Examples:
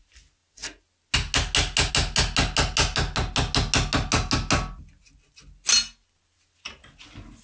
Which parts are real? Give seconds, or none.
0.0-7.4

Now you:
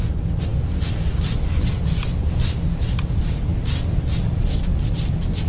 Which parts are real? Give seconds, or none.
0.0-5.5

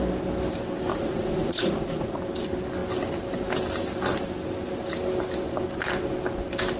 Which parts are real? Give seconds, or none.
0.0-0.9; 2.2-6.8

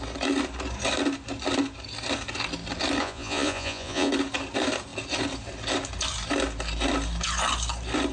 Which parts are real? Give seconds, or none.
0.0-3.0; 4.1-8.1